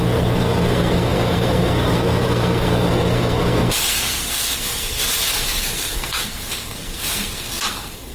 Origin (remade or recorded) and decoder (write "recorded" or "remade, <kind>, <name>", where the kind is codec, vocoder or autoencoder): remade, codec, SNAC